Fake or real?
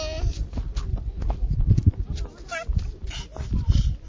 real